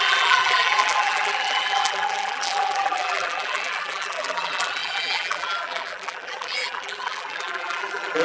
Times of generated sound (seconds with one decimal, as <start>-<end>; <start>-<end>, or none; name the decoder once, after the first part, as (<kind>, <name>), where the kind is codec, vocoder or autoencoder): 0.0-8.2 (vocoder, BigVGAN v2)